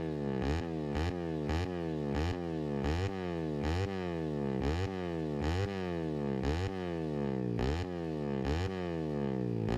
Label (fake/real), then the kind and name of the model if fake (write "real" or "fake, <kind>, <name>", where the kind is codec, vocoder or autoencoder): real